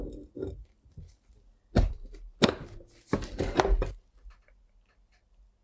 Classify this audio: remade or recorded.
recorded